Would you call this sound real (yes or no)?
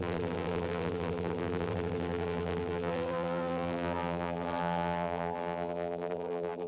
no